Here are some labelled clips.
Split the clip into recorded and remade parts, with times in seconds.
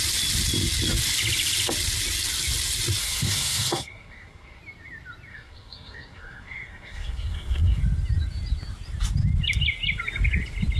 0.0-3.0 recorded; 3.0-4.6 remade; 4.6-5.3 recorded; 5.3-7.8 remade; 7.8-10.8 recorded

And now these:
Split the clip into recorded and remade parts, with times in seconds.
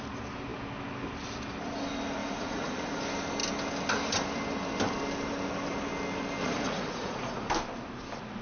0.0-2.2 recorded; 2.2-3.0 remade; 3.0-6.4 recorded; 6.4-7.5 remade; 7.5-8.4 recorded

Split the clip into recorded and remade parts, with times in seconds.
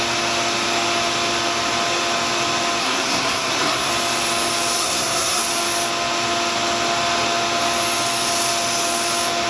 0.0-2.8 recorded; 2.8-3.9 remade; 3.9-4.8 recorded; 4.8-5.4 remade; 5.4-9.5 recorded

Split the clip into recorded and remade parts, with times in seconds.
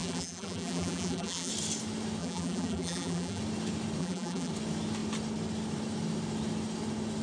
0.0-1.5 remade; 1.5-2.2 recorded; 2.2-3.4 remade; 3.4-4.0 recorded; 4.0-4.5 remade; 4.5-7.2 recorded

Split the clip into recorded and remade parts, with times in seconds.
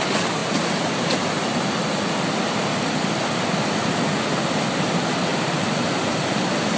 0.0-5.3 recorded; 5.3-6.8 remade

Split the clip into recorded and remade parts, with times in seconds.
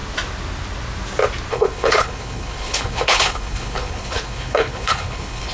0.0-1.5 recorded; 1.5-5.5 remade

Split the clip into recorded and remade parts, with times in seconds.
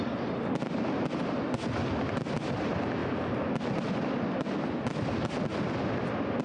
0.0-6.4 recorded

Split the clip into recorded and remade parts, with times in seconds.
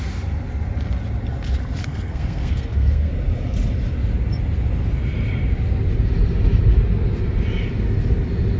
0.0-1.8 recorded; 1.8-3.1 remade; 3.1-8.6 recorded